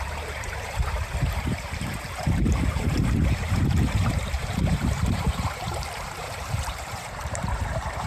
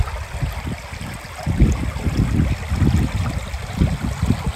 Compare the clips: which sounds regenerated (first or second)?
first